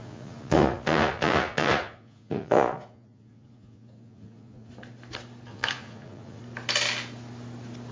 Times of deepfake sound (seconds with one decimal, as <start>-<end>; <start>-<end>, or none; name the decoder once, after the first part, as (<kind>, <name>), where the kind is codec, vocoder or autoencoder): 0.0-4.7 (vocoder, Vocos); 5.5-6.4